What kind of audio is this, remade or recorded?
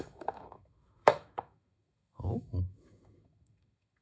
remade